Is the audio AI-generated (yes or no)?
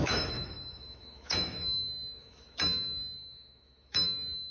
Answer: yes